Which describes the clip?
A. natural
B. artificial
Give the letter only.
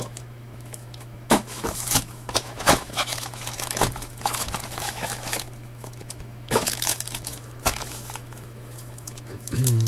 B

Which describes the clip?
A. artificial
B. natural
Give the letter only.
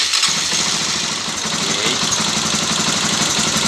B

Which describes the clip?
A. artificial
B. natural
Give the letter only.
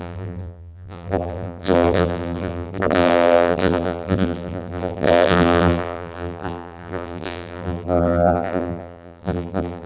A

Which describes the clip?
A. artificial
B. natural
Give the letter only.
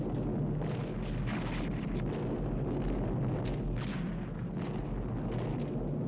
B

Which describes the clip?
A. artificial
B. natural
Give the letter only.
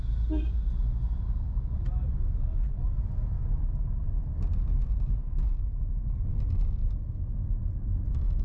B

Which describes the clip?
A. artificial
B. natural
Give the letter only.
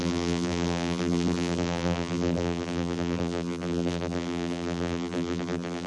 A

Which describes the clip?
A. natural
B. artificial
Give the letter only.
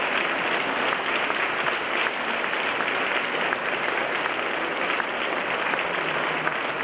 A